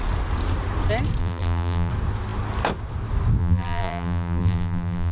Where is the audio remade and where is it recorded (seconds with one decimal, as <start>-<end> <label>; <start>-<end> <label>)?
0.0-1.2 recorded; 1.2-1.9 remade; 1.9-3.4 recorded; 3.4-5.1 remade